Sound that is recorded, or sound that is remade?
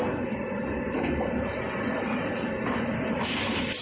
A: recorded